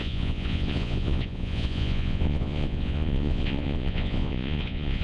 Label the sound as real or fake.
fake